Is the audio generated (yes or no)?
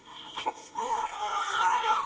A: yes